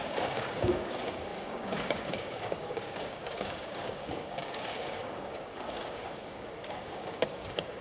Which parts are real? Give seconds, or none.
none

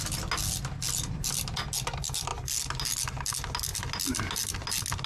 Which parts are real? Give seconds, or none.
0.0-5.1

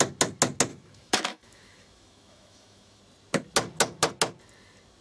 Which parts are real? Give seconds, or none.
0.0-0.7; 3.0-5.0

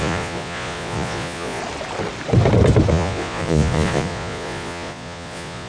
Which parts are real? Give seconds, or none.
1.6-2.9